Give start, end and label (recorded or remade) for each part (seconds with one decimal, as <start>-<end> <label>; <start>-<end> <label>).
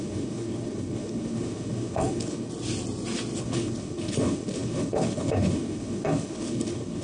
0.0-2.5 remade; 2.5-3.4 recorded; 3.4-7.0 remade